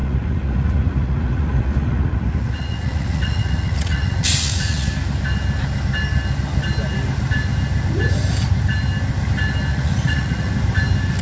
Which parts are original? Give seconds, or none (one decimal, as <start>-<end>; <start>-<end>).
4.9-9.7; 10.5-11.2